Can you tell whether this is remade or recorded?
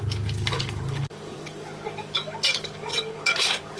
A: remade